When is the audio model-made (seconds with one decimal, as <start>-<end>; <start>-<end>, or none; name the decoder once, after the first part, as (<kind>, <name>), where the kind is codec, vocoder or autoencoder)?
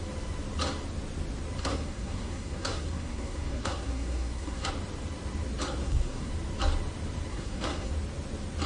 1.6-4.7 (codec, SNAC); 5.8-6.3; 7.3-7.9